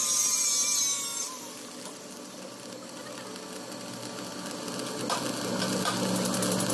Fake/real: real